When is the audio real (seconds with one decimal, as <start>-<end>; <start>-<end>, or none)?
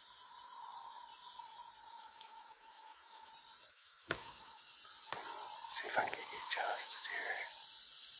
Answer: 0.0-1.9; 3.3-3.7; 4.6-6.2; 7.1-8.2